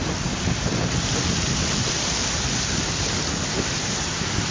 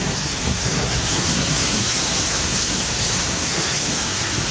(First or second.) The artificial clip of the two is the second